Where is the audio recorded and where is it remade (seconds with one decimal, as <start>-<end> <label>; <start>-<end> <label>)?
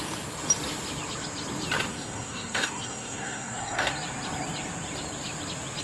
0.0-1.9 recorded; 1.9-3.9 remade; 3.9-5.8 recorded